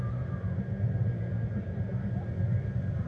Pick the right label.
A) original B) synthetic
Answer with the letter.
A